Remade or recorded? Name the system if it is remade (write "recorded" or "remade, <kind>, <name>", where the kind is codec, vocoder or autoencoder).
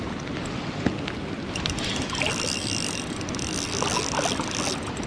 recorded